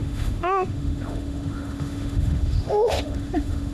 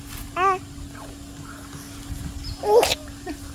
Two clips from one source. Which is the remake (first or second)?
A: first